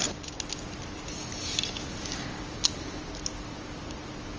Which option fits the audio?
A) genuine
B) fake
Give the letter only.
A